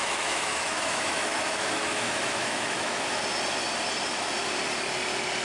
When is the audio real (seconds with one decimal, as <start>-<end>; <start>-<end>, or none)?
3.2-5.4